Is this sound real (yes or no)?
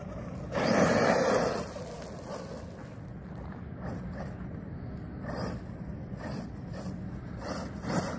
yes